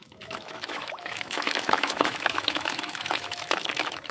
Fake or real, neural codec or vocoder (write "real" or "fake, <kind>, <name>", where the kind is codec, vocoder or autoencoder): fake, autoencoder, DAC-VAE